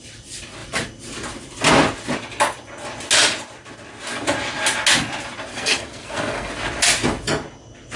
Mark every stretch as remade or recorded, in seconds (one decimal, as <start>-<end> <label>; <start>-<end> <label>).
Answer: 0.0-5.5 recorded; 5.5-6.5 remade; 6.5-8.0 recorded